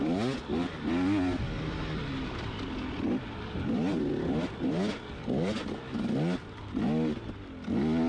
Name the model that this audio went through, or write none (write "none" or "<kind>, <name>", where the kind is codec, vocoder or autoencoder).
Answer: none